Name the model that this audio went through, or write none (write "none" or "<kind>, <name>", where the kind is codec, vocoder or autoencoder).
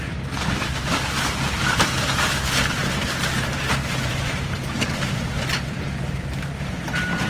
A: vocoder, BigVGAN v2